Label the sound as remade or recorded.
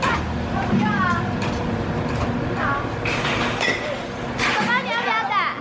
recorded